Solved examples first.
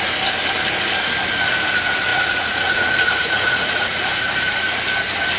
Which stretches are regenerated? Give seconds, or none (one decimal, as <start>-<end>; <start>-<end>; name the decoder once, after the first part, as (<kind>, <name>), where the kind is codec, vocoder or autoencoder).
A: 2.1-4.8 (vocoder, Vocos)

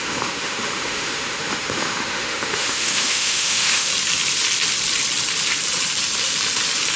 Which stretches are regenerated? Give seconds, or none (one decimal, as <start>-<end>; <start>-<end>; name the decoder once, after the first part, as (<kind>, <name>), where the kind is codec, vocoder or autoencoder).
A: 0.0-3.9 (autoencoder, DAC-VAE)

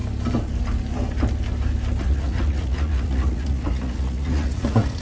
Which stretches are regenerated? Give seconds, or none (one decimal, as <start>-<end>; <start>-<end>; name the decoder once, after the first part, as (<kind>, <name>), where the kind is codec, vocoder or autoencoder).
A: 2.0-5.0 (vocoder, Vocos)

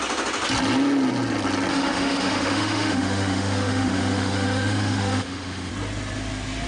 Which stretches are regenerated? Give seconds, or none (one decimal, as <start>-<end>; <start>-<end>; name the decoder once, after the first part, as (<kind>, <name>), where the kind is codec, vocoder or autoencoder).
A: 1.7-5.7 (autoencoder, DAC-VAE)